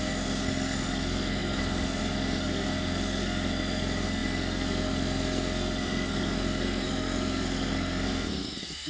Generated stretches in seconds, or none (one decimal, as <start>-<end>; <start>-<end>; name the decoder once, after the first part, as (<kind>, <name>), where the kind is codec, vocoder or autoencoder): 0.0-8.9 (codec, SNAC)